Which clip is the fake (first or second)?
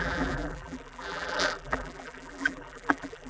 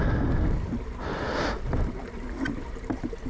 first